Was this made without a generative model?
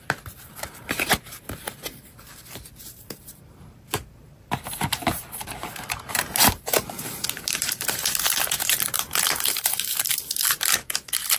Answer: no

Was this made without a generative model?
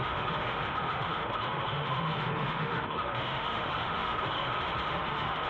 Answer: no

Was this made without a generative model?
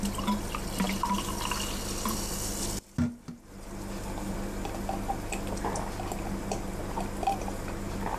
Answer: yes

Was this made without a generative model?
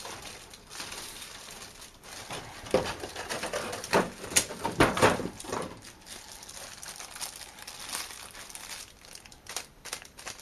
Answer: no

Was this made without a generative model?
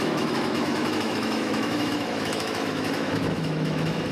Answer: no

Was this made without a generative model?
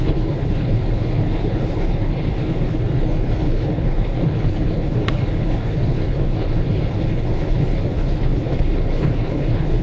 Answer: no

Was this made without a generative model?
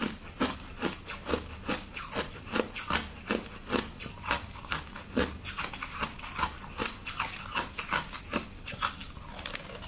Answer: yes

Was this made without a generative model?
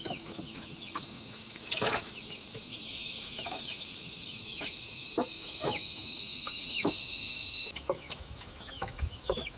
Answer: no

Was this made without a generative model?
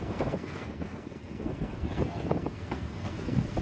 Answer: no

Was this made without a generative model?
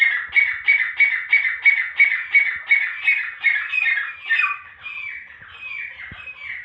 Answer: yes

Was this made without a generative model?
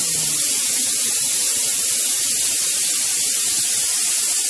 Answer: no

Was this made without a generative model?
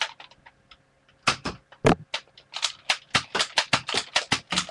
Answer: yes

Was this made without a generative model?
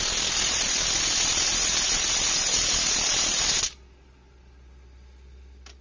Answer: yes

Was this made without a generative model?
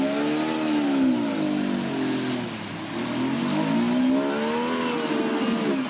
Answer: yes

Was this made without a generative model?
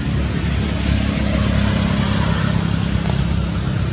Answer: yes